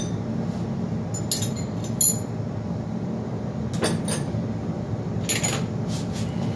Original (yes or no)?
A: yes